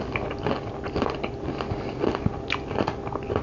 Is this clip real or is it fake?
real